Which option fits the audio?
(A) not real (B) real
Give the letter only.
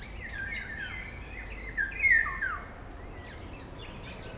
B